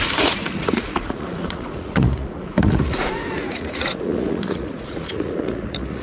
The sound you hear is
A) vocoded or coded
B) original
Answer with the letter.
A